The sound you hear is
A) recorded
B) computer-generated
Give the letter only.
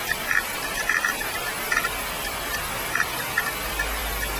B